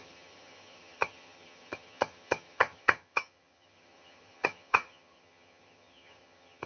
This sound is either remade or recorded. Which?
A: remade